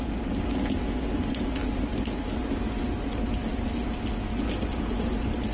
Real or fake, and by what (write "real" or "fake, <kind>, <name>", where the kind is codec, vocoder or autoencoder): real